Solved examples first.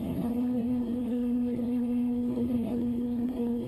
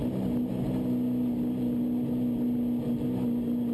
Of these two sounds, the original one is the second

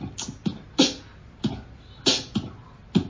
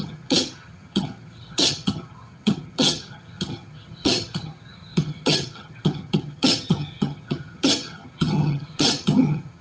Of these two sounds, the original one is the first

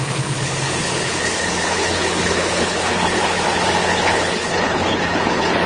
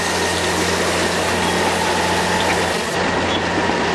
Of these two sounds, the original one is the second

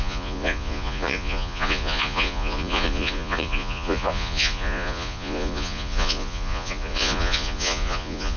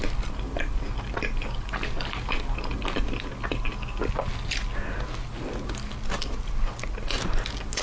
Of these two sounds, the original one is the second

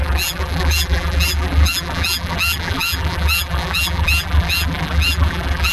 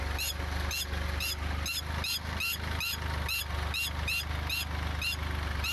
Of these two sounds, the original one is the second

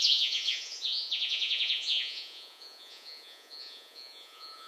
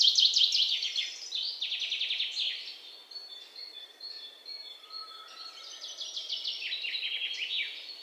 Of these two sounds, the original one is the second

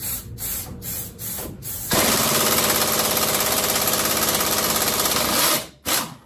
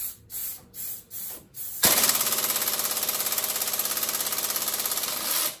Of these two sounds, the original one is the second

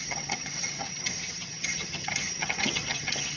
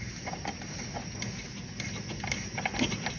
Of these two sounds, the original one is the second